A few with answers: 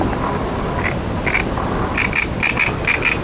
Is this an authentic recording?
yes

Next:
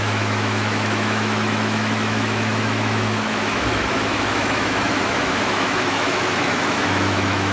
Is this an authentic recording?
no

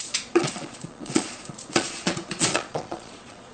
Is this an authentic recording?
no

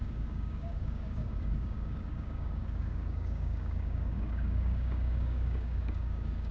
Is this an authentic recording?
no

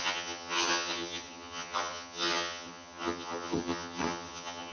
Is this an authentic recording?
no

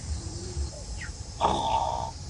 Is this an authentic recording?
no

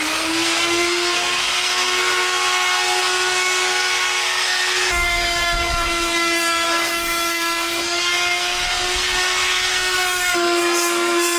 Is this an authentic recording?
no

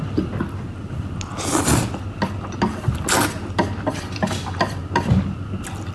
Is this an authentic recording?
yes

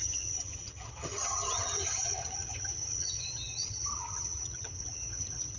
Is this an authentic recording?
no